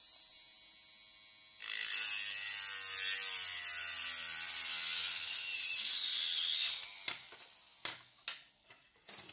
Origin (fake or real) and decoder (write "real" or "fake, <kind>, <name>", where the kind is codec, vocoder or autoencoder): real